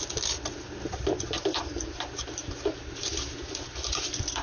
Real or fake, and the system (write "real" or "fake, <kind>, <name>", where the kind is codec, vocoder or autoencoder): real